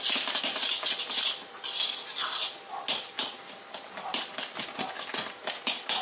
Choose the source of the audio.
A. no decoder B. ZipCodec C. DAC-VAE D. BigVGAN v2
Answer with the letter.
A